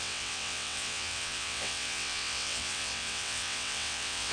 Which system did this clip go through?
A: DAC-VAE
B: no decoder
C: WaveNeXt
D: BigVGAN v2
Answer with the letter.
C